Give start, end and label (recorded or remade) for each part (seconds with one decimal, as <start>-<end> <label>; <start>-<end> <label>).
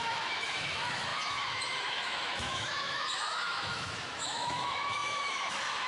0.0-5.9 remade